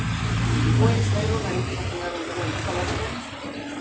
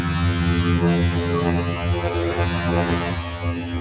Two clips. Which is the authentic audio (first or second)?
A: first